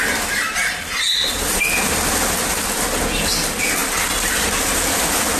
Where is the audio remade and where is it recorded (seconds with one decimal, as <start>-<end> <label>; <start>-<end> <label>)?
0.0-5.4 recorded